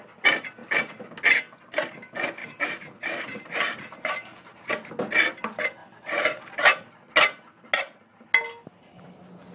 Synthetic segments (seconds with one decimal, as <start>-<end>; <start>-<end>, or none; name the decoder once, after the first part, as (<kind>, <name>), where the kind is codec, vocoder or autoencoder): 2.4-4.9 (vocoder, BigVGAN v2); 5.8-6.6

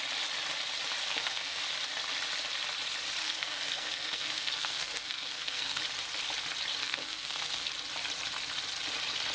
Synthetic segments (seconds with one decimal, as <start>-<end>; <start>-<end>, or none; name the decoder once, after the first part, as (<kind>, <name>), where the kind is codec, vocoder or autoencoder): 1.0-1.6 (codec, SNAC); 3.2-5.8; 6.8-7.7

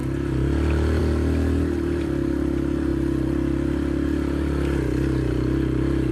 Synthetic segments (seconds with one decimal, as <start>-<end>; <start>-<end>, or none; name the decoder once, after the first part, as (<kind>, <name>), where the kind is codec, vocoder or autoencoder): none